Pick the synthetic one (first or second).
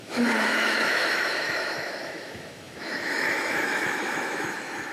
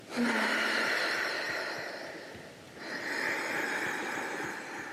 first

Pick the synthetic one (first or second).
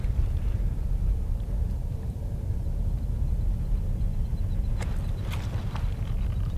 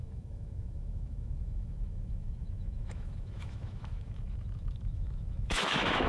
second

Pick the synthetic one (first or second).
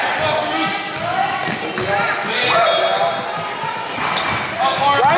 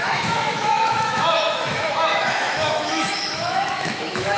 second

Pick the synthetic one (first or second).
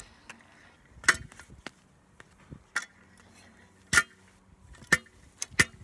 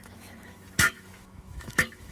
second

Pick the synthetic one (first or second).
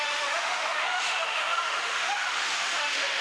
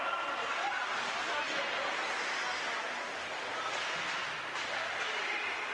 first